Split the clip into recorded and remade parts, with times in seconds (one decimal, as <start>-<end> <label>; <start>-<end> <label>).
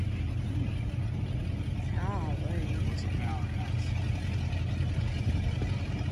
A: 0.0-1.4 remade; 1.4-5.1 recorded; 5.1-6.1 remade